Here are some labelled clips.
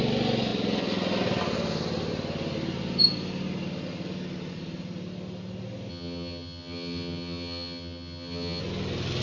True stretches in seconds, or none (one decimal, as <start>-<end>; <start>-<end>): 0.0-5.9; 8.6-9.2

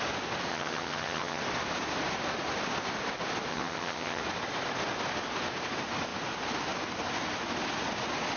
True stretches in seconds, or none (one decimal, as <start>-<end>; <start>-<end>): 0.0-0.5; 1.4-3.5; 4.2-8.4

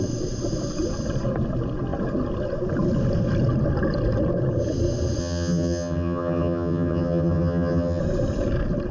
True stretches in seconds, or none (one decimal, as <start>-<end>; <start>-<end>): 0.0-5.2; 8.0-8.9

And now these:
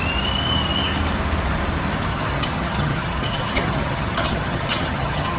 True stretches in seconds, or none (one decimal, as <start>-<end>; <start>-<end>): 0.0-2.1

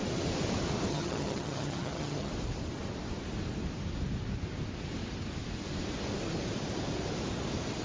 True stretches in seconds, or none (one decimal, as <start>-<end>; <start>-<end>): 0.0-0.9; 2.3-7.8

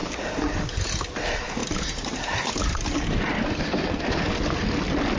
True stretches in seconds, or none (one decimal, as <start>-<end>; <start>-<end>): 0.0-5.2

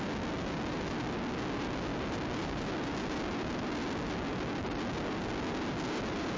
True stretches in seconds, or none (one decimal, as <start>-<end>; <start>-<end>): 0.0-6.4